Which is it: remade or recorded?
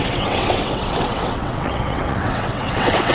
remade